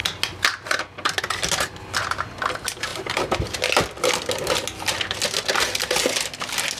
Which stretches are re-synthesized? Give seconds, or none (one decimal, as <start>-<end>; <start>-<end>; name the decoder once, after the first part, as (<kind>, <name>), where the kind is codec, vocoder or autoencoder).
none